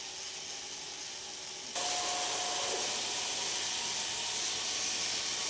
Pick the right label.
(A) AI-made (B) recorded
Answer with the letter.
B